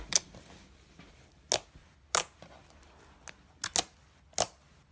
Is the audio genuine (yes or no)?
yes